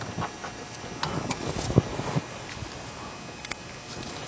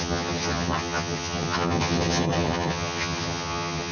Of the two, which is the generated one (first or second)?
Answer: second